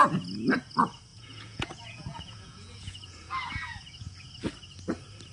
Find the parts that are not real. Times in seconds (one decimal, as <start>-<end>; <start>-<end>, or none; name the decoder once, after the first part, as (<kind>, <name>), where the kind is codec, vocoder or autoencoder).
1.1-4.3 (vocoder, Vocos)